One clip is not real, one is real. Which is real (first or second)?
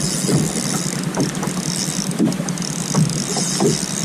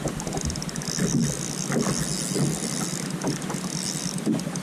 second